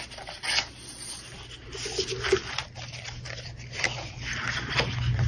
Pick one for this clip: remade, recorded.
recorded